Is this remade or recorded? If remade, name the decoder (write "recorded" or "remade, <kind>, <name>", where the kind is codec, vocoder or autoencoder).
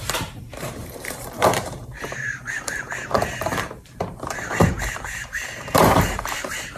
remade, vocoder, BigVGAN v2